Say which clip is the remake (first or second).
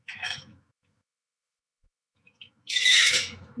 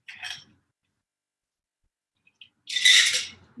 first